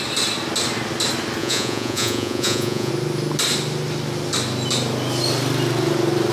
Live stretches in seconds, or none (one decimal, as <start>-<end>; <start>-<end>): 0.0-1.4; 2.9-6.3